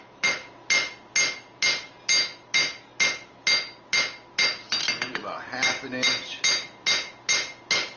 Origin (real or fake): real